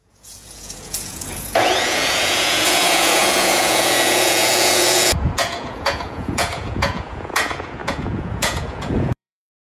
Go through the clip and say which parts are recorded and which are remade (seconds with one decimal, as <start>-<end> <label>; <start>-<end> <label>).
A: 0.0-9.7 remade